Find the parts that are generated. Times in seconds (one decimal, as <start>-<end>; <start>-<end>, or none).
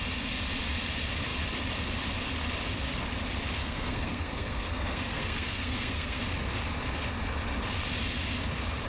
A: 3.6-6.2